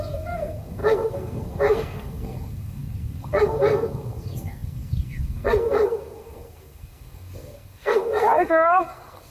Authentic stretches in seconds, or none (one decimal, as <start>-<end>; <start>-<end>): none